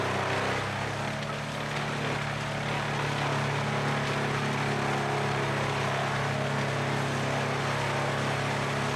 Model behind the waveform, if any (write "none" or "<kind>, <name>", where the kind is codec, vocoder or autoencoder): none